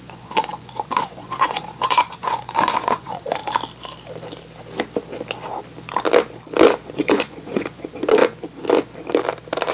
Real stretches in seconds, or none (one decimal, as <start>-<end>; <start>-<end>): 3.4-6.9; 8.2-9.7